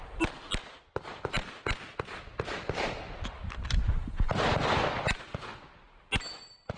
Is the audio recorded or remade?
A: recorded